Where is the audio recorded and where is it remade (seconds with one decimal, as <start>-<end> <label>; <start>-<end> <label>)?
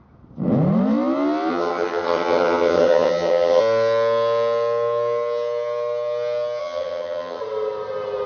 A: 0.0-1.5 recorded; 1.5-3.6 remade; 3.6-6.6 recorded; 6.6-7.4 remade; 7.4-8.3 recorded